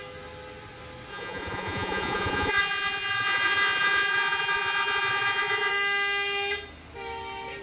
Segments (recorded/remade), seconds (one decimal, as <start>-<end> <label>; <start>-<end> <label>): 0.0-1.1 recorded; 1.1-5.7 remade; 5.7-7.6 recorded